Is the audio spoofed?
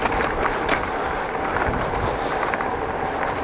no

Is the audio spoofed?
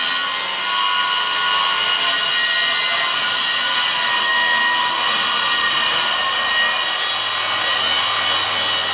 no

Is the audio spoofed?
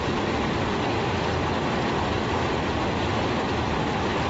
no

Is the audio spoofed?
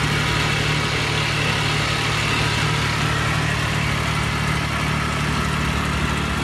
no